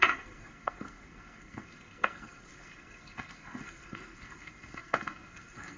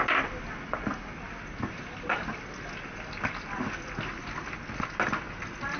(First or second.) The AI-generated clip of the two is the first